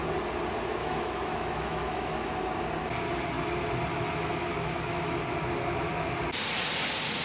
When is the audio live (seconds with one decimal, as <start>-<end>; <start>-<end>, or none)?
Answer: 0.0-0.8; 2.3-3.9; 5.2-7.2